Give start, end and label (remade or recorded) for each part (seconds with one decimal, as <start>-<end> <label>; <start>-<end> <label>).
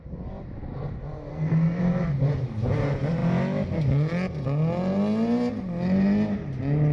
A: 0.0-1.3 recorded; 1.3-1.8 remade; 1.8-6.9 recorded